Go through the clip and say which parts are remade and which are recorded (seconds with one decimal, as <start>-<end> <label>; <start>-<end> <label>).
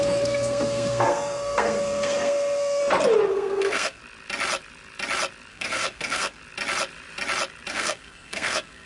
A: 0.0-2.8 remade; 2.8-3.3 recorded; 3.3-4.0 remade; 4.0-5.5 recorded; 5.5-6.4 remade; 6.4-7.7 recorded; 7.7-8.9 remade